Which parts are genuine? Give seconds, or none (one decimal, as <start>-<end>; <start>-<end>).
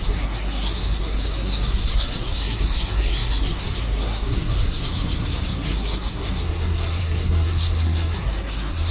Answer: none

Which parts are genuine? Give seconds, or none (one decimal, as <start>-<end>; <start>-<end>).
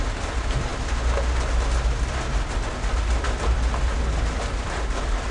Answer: 0.0-5.3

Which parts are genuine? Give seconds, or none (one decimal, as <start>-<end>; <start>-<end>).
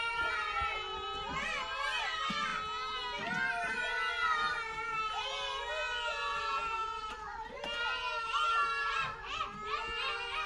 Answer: 0.0-10.5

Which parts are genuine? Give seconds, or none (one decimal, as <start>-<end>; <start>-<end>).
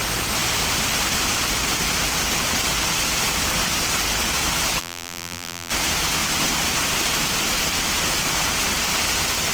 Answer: 0.0-4.8; 5.7-9.5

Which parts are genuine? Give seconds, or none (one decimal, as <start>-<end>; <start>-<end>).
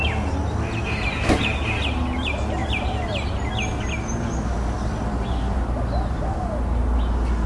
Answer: 0.0-7.5